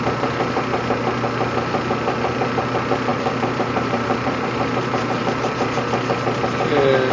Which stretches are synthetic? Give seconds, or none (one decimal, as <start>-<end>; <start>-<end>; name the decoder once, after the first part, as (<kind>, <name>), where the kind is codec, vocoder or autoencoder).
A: 3.1-5.8 (vocoder, BigVGAN v2)